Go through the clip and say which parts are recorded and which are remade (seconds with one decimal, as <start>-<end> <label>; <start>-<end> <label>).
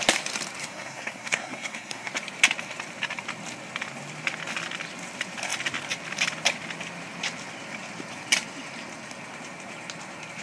0.0-0.6 recorded; 0.6-2.1 remade; 2.1-10.4 recorded